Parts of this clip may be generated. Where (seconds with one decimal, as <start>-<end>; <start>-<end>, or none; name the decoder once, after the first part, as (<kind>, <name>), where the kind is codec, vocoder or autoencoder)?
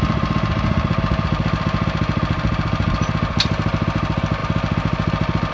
none